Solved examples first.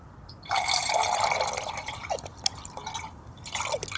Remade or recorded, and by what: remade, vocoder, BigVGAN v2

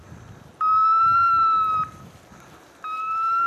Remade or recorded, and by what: recorded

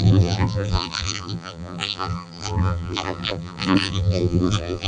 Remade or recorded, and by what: remade, vocoder, BigVGAN v2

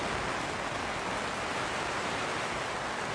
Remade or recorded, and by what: recorded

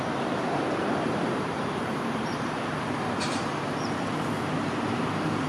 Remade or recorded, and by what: remade, vocoder, BigVGAN v2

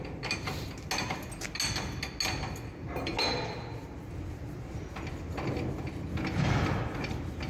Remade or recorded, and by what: recorded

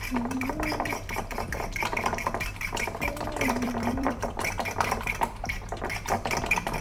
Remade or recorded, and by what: remade, vocoder, BigVGAN v2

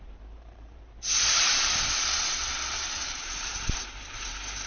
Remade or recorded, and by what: remade, vocoder, BigVGAN v2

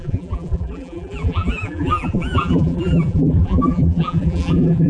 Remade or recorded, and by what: remade, vocoder, BigVGAN v2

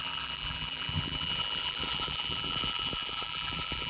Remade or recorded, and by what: remade, vocoder, BigVGAN v2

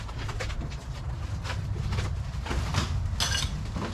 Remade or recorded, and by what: recorded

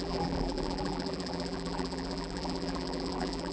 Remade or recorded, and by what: remade, vocoder, BigVGAN v2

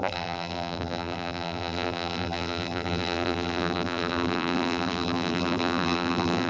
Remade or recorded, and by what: remade, vocoder, BigVGAN v2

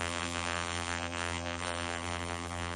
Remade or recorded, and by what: remade, vocoder, BigVGAN v2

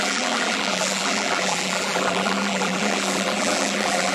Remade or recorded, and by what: remade, vocoder, BigVGAN v2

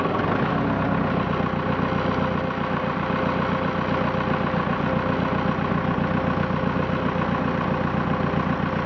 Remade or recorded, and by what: recorded